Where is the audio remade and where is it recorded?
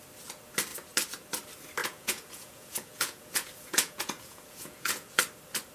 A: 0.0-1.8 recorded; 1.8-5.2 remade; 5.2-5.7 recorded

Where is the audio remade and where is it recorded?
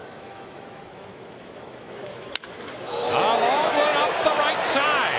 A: 0.0-3.1 remade; 3.1-5.2 recorded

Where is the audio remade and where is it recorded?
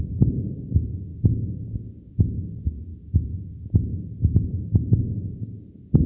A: 0.0-6.1 recorded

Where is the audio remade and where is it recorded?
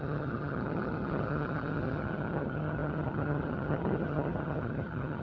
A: 0.0-5.2 remade